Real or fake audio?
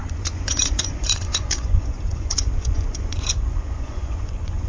fake